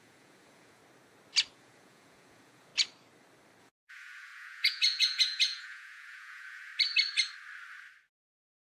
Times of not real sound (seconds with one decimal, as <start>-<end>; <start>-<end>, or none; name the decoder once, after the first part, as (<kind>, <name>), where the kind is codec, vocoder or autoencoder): 0.0-0.8 (vocoder, Vocos); 1.5-2.7; 3.6-6.7